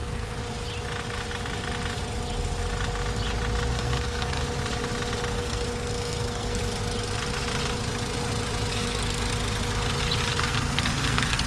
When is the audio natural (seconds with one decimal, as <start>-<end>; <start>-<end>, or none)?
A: 0.4-3.7; 4.4-5.3; 6.6-8.7; 9.3-10.3